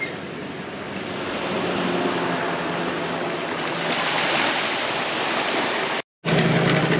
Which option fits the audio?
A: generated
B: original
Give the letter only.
B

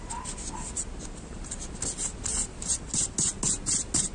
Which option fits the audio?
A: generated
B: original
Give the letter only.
B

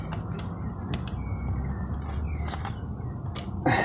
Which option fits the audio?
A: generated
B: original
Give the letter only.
B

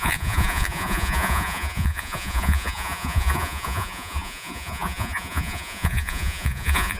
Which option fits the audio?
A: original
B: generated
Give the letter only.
B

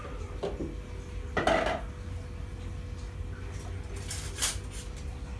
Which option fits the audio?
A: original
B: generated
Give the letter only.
A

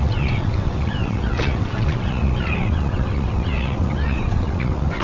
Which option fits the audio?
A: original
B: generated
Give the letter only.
B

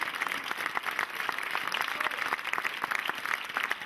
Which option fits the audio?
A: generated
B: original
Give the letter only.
B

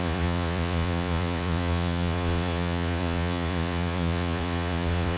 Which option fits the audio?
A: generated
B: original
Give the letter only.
A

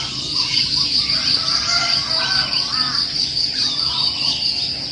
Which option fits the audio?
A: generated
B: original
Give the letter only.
B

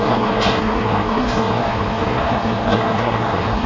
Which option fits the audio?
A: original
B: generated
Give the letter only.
B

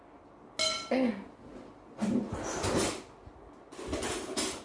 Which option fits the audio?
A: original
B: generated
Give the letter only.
A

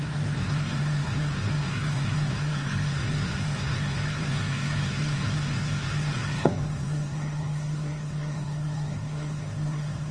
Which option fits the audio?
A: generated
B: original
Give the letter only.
A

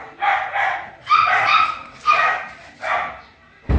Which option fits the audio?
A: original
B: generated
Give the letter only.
A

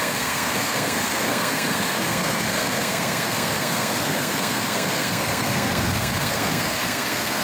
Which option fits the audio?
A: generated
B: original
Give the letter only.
A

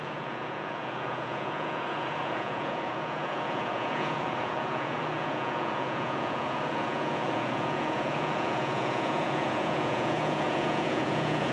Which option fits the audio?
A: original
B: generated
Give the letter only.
B